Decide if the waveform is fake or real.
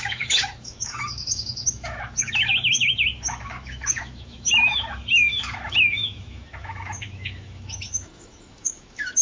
fake